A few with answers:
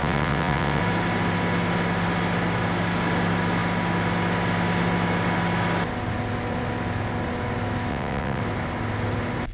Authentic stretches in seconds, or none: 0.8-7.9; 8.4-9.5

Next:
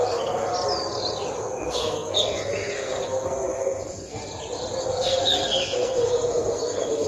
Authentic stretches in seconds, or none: 0.5-1.4; 4.2-4.8

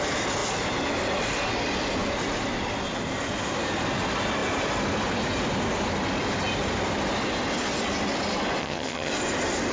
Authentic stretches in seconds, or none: 0.0-8.6; 9.1-9.7

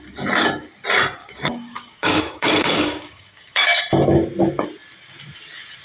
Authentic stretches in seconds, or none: 0.0-1.2; 3.8-5.8

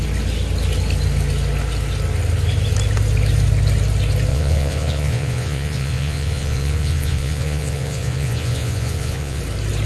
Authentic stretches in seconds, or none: 0.0-4.3; 9.4-9.9

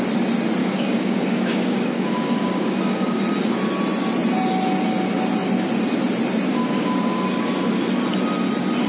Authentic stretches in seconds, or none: 0.0-0.6; 3.2-6.5; 7.8-8.9

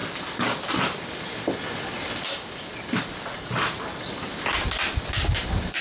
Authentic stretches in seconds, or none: 0.0-5.8

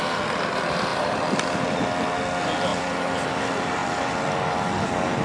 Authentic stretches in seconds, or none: 0.0-0.9; 1.6-3.8